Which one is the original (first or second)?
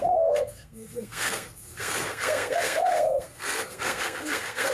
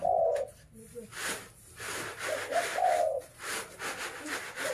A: second